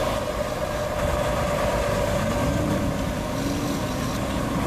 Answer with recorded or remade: recorded